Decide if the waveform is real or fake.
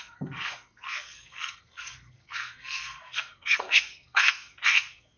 fake